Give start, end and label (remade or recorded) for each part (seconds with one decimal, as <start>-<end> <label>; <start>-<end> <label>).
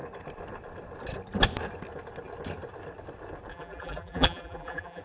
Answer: 0.0-3.5 recorded; 3.5-5.0 remade